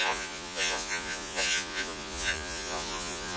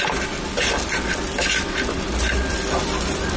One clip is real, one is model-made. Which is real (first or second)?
second